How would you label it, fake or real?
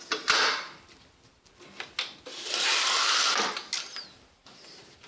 real